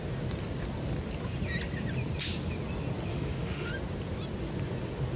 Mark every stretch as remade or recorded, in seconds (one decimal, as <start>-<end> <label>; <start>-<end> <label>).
0.0-3.1 recorded; 3.1-3.7 remade; 3.7-5.2 recorded